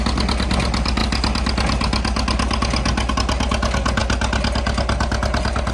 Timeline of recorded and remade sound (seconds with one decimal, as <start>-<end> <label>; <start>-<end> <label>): 0.0-5.7 recorded